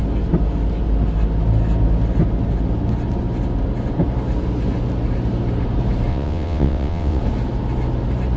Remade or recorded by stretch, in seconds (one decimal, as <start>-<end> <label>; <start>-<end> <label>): 0.0-6.1 recorded; 6.1-7.2 remade; 7.2-8.4 recorded